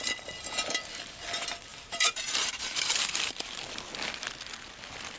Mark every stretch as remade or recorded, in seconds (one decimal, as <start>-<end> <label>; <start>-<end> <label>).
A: 0.0-1.7 recorded; 1.7-3.6 remade; 3.6-5.2 recorded